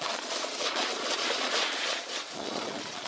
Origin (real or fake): fake